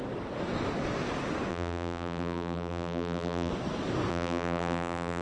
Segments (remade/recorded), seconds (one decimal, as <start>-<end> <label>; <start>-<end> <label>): 0.0-1.5 recorded; 1.5-3.5 remade; 3.5-4.1 recorded; 4.1-5.2 remade